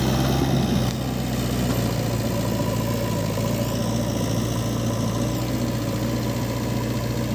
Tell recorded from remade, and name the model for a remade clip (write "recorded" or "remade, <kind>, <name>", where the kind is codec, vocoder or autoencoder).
recorded